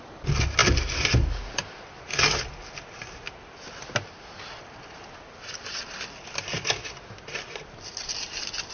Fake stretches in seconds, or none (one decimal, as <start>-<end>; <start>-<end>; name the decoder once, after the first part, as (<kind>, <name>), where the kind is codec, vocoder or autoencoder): none